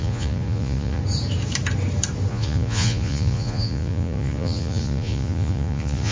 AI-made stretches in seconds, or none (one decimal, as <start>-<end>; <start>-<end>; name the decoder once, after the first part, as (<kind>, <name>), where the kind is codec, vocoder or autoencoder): 0.0-1.0 (vocoder, Vocos); 2.3-6.1